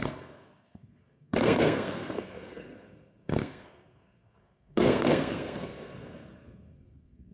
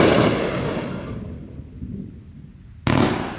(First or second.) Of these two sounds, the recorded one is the second